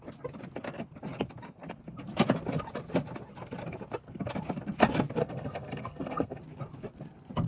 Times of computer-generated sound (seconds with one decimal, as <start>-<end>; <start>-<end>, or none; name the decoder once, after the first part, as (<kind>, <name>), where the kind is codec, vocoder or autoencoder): 5.2-6.4 (codec, SNAC)